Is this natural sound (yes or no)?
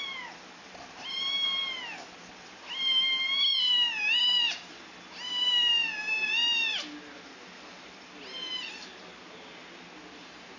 yes